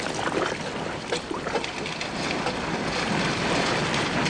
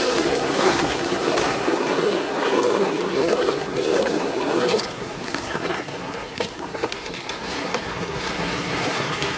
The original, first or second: first